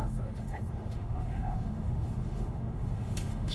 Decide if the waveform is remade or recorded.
remade